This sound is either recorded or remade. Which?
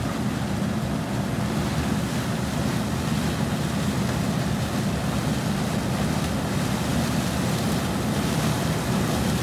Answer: recorded